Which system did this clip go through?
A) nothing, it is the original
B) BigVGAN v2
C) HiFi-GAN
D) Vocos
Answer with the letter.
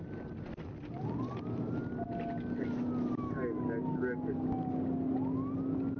A